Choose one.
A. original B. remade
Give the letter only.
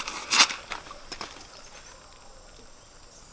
A